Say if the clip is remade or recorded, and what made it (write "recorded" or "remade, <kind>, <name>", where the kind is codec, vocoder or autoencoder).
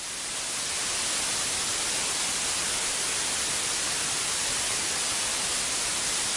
recorded